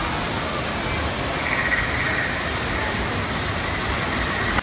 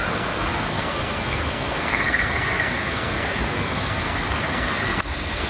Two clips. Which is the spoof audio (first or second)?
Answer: second